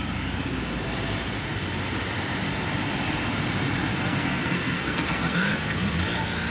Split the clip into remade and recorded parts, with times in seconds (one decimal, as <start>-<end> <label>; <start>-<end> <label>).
0.0-3.9 recorded; 3.9-5.5 remade; 5.5-6.5 recorded